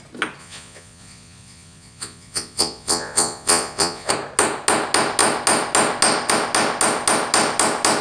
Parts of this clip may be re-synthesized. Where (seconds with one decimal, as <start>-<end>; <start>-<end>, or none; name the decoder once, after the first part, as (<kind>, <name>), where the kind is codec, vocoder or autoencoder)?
0.4-4.1 (vocoder, Vocos)